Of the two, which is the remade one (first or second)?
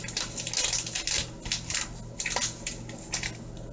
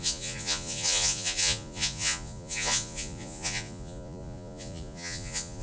second